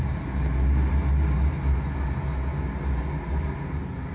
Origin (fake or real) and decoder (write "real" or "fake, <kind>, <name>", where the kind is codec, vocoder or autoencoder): real